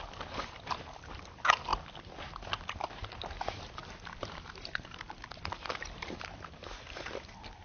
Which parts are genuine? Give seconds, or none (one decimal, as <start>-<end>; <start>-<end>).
0.0-7.6